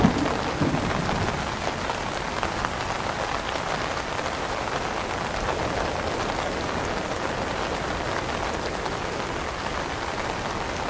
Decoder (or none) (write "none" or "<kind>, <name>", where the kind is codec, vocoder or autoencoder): none